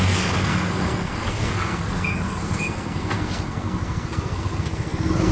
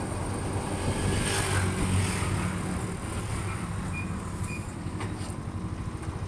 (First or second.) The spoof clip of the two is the first